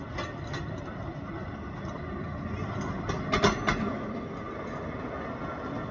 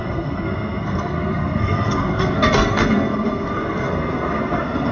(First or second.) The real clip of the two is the first